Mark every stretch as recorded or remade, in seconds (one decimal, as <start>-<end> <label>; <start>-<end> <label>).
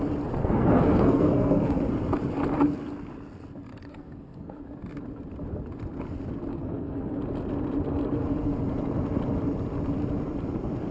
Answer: 0.0-0.4 recorded; 0.4-1.9 remade; 1.9-3.7 recorded; 3.7-4.6 remade; 4.6-6.5 recorded; 6.5-7.2 remade; 7.2-10.9 recorded